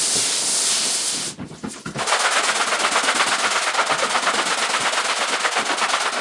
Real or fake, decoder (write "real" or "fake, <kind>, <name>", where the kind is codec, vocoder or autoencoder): real